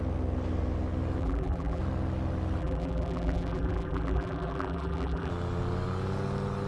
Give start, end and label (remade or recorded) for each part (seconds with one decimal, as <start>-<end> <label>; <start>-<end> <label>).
0.0-1.2 recorded; 1.2-1.8 remade; 1.8-2.6 recorded; 2.6-5.3 remade; 5.3-6.7 recorded